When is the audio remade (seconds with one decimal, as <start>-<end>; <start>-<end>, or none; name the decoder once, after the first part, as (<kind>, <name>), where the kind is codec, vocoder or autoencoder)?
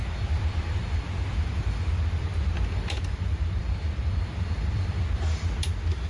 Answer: 0.0-6.1 (vocoder, BigVGAN v2)